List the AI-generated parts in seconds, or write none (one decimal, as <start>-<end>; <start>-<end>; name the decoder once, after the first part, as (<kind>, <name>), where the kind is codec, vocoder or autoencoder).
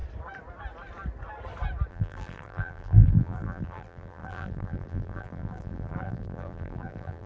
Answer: 1.9-7.3 (vocoder, BigVGAN v2)